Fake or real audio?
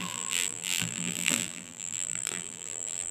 fake